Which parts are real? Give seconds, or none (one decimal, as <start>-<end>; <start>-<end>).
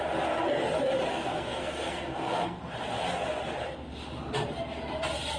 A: 0.0-1.1; 2.6-5.4